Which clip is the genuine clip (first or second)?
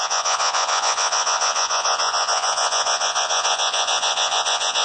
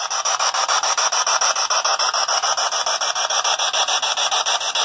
second